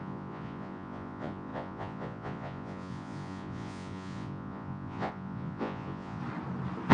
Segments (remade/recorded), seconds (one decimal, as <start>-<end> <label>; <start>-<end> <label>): 0.0-6.2 remade; 6.2-6.9 recorded